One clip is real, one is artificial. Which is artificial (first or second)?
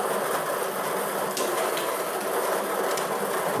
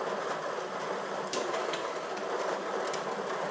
second